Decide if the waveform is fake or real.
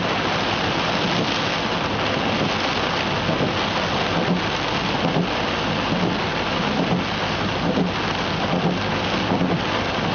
real